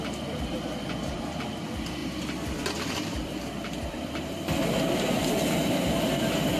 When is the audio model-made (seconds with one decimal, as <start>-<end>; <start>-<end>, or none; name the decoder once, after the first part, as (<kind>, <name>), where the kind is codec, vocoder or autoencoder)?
2.0-6.0 (vocoder, BigVGAN v2)